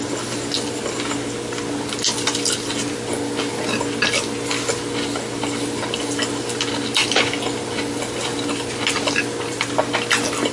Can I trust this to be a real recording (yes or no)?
yes